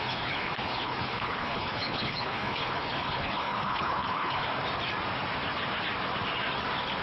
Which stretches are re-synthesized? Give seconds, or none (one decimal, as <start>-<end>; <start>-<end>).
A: 0.0-4.5